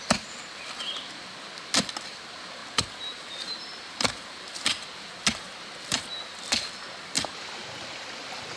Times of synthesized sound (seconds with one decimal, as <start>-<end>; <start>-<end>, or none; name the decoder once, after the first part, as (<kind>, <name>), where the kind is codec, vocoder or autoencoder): none